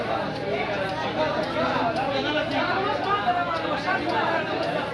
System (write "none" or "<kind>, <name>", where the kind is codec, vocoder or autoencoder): none